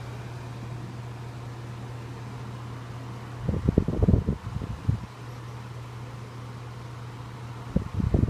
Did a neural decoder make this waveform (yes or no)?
no